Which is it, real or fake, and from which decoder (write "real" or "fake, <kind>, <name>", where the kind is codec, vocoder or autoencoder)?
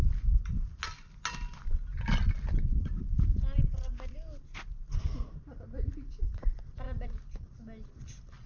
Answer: real